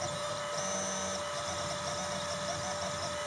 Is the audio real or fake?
real